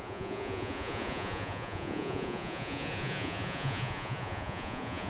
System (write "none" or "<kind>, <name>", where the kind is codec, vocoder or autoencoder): vocoder, Vocos